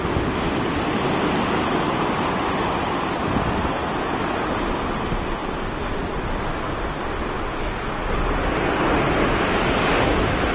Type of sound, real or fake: real